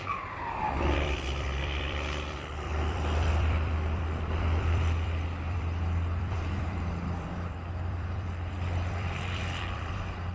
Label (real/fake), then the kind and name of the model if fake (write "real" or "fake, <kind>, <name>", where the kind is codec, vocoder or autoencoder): fake, vocoder, BigVGAN v2